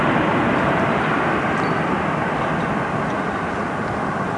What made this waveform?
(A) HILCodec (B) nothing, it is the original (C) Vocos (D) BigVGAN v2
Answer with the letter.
B